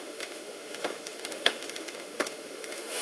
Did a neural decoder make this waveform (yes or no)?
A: yes